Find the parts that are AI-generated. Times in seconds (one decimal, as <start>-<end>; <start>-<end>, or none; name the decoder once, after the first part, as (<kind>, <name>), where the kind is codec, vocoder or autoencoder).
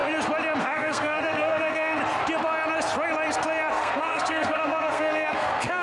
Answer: 0.6-2.0 (codec, SNAC); 3.7-5.8